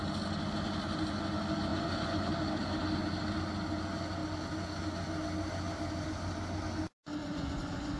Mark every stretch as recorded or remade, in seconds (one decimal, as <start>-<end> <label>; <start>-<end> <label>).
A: 0.0-1.7 recorded; 1.7-2.3 remade; 2.3-7.2 recorded; 7.2-8.0 remade